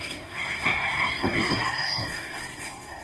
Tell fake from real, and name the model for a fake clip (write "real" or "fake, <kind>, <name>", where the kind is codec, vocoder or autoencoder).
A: fake, codec, SNAC